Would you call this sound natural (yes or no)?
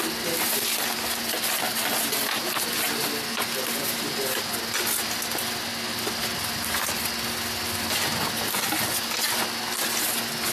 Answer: yes